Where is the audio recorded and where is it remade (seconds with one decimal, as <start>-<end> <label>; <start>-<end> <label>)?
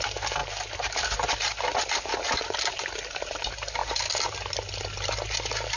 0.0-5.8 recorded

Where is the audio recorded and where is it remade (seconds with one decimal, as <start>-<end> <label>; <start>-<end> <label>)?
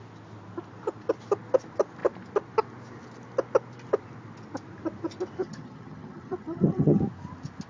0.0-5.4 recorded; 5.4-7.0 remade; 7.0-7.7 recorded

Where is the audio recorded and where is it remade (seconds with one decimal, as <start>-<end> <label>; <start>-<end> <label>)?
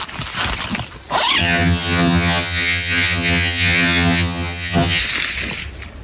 0.0-1.4 recorded; 1.4-5.0 remade; 5.0-6.0 recorded